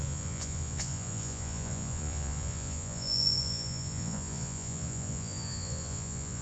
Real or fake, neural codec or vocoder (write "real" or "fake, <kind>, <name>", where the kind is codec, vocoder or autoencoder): fake, vocoder, Vocos